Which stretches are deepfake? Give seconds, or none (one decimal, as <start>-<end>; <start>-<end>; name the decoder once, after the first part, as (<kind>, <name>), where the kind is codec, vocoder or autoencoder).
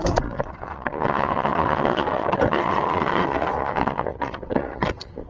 0.0-5.3 (vocoder, WaveNeXt)